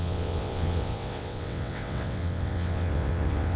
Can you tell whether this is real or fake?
fake